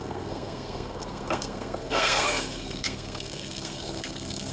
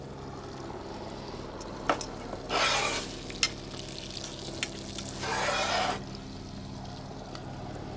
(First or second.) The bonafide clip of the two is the second